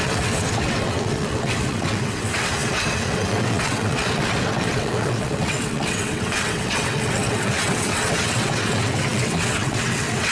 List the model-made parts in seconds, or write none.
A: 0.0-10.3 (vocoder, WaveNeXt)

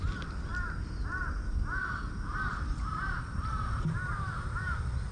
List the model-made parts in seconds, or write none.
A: 0.0-0.5 (vocoder, BigVGAN v2); 2.8-5.1

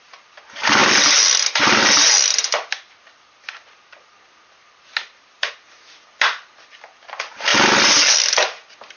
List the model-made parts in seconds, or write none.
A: none